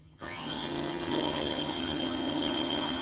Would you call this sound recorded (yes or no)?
no